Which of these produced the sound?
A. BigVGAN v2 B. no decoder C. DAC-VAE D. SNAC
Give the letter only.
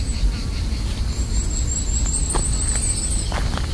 B